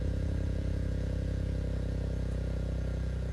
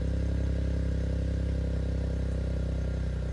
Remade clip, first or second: first